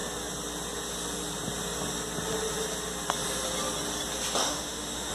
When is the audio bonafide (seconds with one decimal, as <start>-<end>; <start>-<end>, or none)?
0.0-4.4